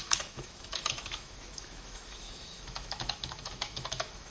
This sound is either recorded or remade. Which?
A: remade